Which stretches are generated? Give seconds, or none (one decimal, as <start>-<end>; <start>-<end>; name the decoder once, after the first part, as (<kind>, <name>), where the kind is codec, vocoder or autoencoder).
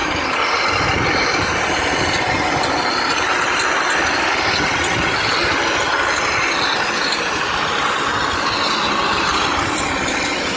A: none